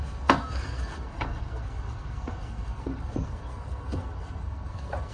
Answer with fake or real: fake